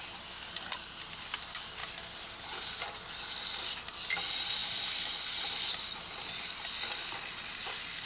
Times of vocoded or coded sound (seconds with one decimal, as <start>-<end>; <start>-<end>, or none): none